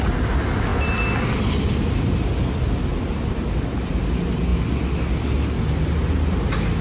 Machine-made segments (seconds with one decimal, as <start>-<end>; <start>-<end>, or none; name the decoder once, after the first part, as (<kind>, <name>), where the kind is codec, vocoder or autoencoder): none